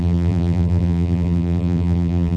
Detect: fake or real fake